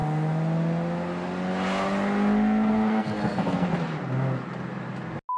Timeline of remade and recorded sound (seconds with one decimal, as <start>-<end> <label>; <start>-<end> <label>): 0.0-2.7 recorded; 2.7-3.7 remade; 3.7-5.4 recorded